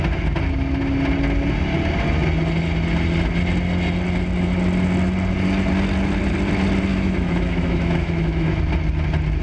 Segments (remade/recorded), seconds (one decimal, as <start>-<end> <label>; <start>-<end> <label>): 0.0-6.9 recorded; 6.9-8.6 remade; 8.6-9.4 recorded